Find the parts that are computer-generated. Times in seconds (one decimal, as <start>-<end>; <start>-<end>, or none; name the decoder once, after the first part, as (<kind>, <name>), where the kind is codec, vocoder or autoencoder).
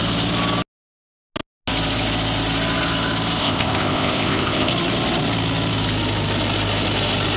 3.4-4.7 (codec, ZipCodec)